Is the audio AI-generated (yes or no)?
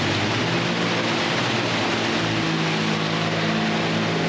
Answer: no